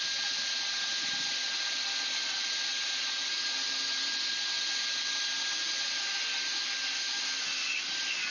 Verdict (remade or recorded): recorded